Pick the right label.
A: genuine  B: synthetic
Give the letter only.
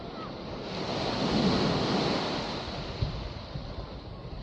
A